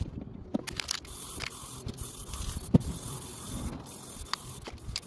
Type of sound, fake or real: real